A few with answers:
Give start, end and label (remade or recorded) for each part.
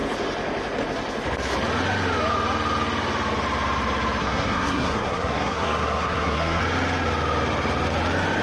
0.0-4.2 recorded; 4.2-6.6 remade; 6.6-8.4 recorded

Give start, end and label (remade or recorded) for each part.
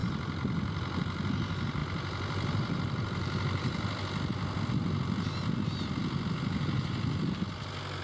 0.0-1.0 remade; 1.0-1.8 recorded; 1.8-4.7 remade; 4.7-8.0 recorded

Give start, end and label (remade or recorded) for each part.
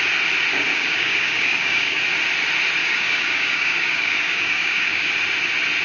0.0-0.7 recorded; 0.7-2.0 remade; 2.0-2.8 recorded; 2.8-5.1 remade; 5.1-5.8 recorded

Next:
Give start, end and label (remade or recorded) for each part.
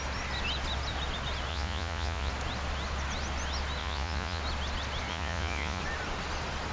0.0-1.5 recorded; 1.5-2.3 remade; 2.3-3.8 recorded; 3.8-4.4 remade; 4.4-5.1 recorded; 5.1-5.8 remade; 5.8-6.7 recorded